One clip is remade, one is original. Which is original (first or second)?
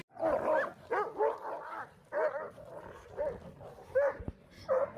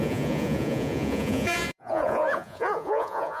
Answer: first